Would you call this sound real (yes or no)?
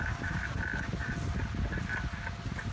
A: yes